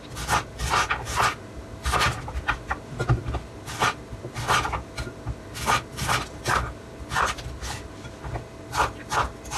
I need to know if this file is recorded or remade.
recorded